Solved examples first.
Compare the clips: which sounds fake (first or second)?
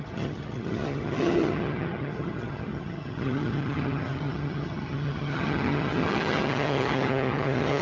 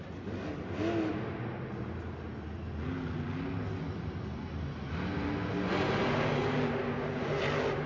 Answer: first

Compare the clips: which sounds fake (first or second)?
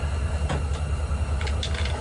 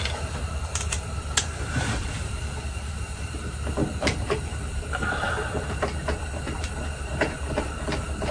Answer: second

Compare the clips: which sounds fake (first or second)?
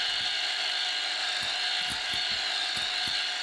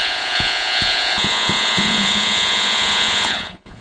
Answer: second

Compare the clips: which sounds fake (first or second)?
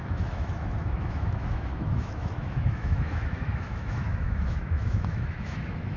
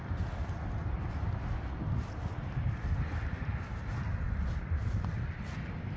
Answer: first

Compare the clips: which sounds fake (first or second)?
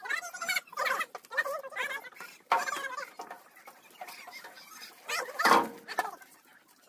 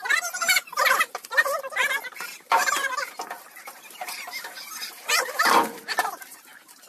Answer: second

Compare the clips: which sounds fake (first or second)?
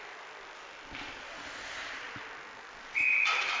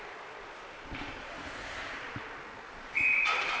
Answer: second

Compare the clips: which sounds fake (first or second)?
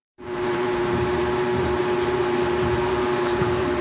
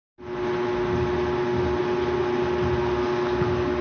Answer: first